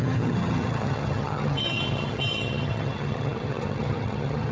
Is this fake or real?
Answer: fake